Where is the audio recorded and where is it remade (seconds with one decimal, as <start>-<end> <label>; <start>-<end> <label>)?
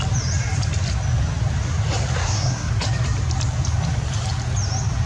0.0-2.2 recorded; 2.2-2.7 remade; 2.7-5.1 recorded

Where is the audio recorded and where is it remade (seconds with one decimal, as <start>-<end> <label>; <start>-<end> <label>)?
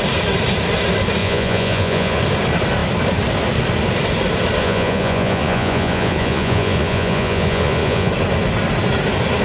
0.0-1.2 recorded; 1.2-2.2 remade; 2.2-4.6 recorded; 4.6-8.1 remade; 8.1-9.4 recorded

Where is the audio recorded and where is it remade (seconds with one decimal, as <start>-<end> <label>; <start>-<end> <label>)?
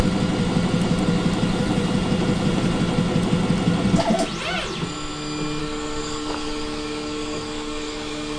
0.0-5.6 recorded; 5.6-8.4 remade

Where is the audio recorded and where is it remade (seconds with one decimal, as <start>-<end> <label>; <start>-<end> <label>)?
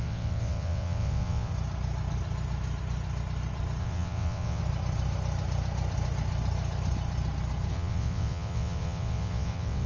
0.0-1.5 remade; 1.5-3.8 recorded; 3.8-4.6 remade; 4.6-7.7 recorded; 7.7-9.9 remade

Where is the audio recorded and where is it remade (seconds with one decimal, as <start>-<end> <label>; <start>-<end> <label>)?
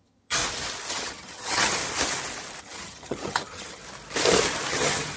0.0-0.4 remade; 0.4-0.9 recorded; 0.9-1.8 remade; 1.8-2.6 recorded; 2.6-3.8 remade; 3.8-4.7 recorded; 4.7-5.2 remade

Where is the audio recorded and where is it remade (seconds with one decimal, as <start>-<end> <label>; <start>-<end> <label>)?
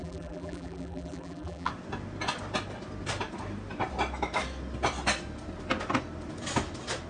0.0-1.7 remade; 1.7-7.1 recorded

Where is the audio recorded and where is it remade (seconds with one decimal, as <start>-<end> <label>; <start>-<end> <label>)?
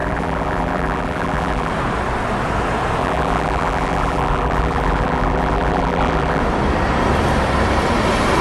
0.0-1.7 remade; 1.7-3.0 recorded; 3.0-6.4 remade; 6.4-8.4 recorded